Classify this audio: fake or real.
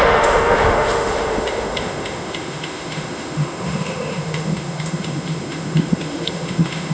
fake